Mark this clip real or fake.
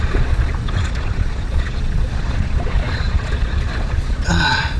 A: fake